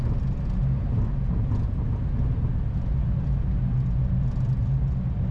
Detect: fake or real real